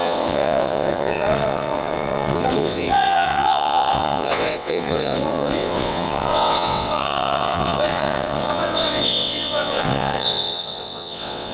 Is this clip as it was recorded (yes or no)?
no